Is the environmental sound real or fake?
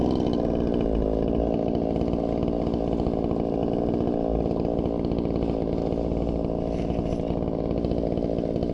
real